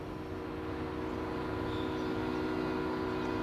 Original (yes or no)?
yes